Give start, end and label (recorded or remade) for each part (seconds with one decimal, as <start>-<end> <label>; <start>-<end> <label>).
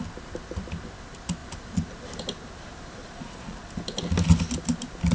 0.0-3.0 recorded; 3.0-3.6 remade; 3.6-5.1 recorded